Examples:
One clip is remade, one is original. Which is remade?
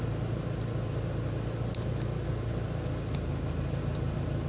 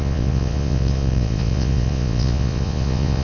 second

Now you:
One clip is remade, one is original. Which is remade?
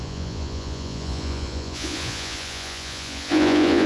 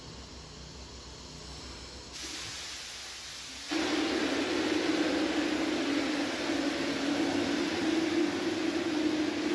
first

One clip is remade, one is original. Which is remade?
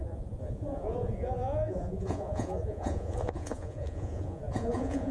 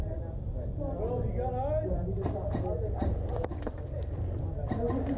first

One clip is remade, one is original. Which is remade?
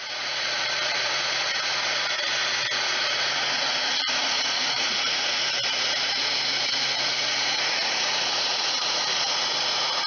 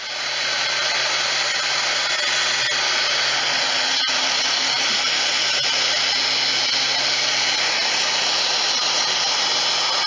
first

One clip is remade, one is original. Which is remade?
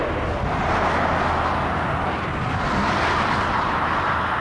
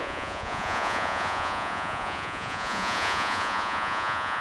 second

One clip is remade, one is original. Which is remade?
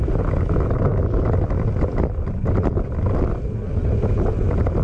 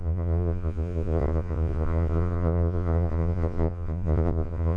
second